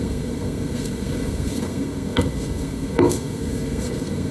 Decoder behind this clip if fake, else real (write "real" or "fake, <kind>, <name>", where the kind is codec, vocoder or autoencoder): fake, codec, SNAC